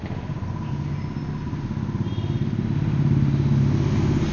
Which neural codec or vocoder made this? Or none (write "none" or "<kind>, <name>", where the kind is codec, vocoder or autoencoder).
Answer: none